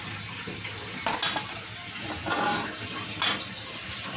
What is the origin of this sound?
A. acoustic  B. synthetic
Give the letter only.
A